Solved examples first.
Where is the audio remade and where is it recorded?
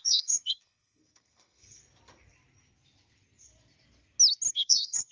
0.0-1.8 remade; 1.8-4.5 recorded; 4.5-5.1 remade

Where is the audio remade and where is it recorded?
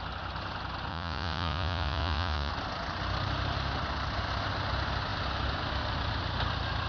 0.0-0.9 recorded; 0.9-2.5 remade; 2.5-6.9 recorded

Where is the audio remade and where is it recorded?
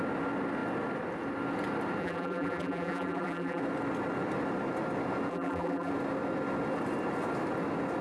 0.0-2.0 recorded; 2.0-3.6 remade; 3.6-5.3 recorded; 5.3-5.9 remade; 5.9-8.0 recorded